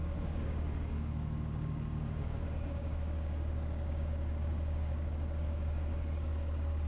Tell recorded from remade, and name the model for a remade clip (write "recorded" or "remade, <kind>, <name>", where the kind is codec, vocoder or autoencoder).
remade, codec, DAC